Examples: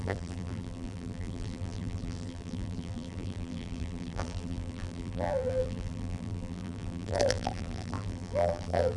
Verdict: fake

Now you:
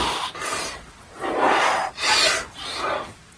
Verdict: real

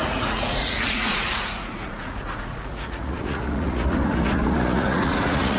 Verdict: fake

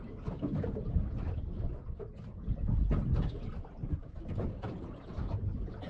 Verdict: real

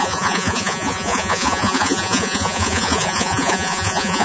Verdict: fake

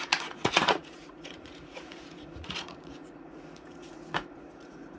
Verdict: fake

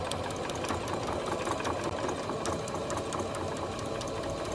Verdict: real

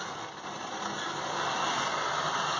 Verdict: real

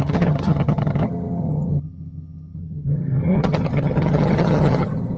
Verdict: fake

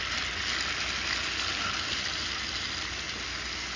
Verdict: real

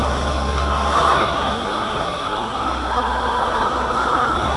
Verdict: fake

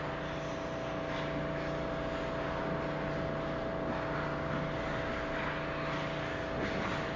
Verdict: real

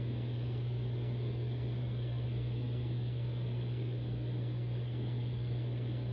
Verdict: fake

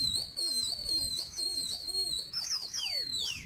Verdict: fake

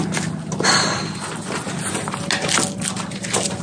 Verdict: real